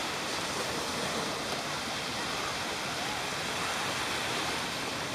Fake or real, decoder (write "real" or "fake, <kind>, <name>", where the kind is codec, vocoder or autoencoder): real